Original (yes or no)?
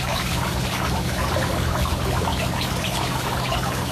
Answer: no